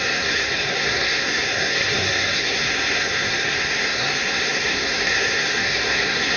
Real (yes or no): no